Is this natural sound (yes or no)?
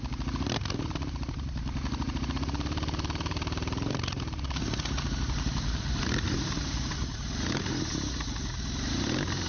no